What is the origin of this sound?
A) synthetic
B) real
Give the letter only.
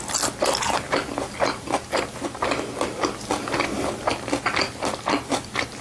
B